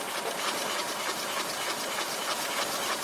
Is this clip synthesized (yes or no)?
no